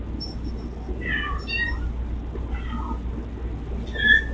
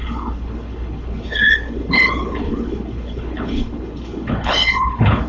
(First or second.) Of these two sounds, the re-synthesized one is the second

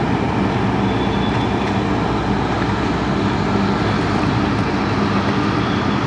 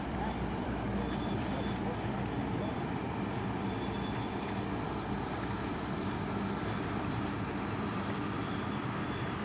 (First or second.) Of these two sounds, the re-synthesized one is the second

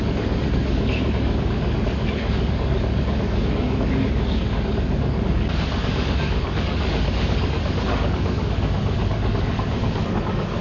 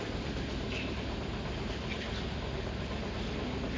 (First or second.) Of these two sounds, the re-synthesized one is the first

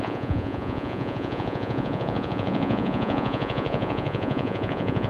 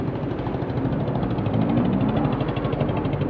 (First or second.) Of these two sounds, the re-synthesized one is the first